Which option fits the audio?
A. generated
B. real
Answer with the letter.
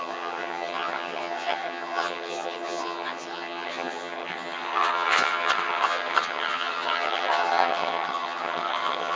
A